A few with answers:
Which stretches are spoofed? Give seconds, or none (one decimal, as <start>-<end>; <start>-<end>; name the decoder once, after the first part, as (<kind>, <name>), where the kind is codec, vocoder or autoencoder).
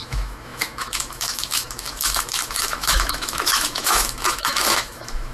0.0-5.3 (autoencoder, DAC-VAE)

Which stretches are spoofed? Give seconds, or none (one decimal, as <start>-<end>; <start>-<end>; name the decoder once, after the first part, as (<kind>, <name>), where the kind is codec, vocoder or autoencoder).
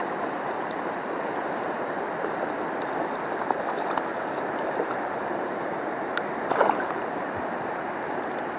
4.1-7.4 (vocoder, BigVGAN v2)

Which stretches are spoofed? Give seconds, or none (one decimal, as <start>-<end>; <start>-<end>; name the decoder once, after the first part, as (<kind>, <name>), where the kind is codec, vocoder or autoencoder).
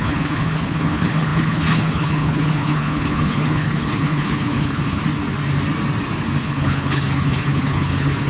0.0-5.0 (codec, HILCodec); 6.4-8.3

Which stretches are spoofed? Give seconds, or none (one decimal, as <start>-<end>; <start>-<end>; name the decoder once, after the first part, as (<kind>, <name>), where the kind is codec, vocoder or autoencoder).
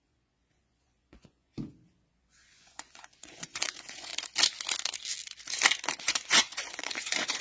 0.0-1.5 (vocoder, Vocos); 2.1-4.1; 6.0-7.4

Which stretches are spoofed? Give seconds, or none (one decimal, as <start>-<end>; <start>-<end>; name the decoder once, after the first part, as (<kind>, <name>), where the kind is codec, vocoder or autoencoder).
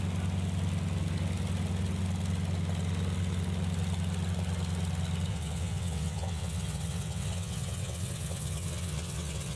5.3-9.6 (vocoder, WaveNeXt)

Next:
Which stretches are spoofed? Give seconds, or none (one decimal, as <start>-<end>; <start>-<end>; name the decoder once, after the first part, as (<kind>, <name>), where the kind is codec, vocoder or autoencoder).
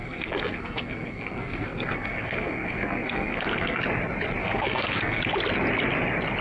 0.0-3.8 (codec, SNAC); 4.4-5.2